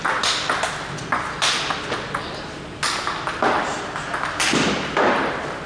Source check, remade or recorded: recorded